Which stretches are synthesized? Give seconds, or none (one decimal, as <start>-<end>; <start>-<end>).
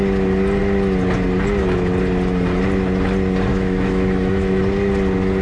3.5-4.6